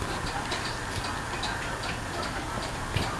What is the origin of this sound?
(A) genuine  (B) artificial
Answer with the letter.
A